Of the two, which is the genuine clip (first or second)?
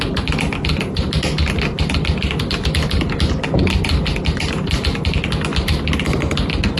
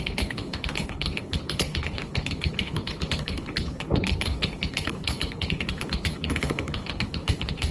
first